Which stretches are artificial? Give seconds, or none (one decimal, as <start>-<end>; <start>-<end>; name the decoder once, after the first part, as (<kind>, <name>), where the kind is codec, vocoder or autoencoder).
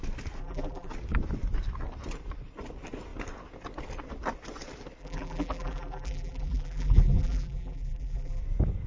0.4-0.9 (vocoder, BigVGAN v2); 5.0-8.4